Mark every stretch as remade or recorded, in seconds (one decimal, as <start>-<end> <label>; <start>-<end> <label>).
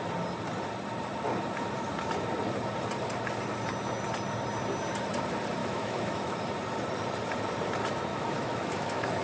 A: 0.0-5.6 recorded; 5.6-6.4 remade; 6.4-8.1 recorded; 8.1-9.2 remade